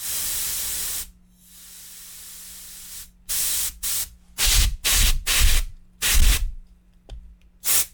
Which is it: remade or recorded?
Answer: recorded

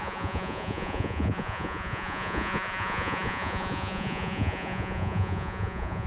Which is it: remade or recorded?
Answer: remade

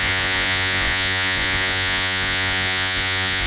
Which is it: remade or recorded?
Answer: remade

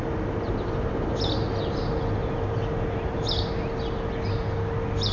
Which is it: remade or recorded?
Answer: recorded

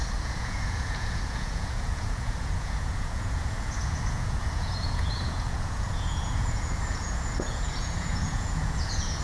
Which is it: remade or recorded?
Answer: remade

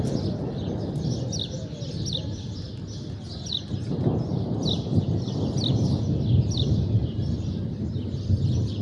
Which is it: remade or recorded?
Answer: recorded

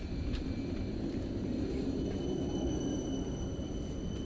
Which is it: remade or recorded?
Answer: recorded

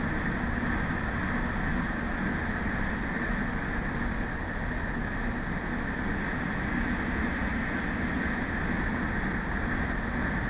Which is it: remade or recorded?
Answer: recorded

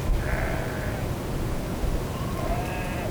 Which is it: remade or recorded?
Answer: recorded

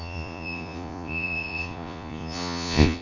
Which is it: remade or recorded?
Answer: remade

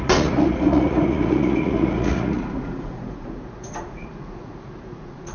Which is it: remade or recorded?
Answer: remade